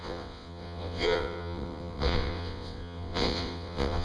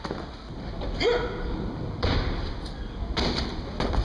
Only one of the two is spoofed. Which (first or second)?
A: first